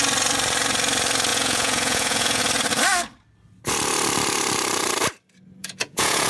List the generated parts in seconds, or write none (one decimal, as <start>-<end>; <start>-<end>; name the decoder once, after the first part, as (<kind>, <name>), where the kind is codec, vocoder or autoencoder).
1.3-2.4 (vocoder, Vocos); 5.6-6.3